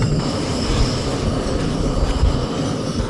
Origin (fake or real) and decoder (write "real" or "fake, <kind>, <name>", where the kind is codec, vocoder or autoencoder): real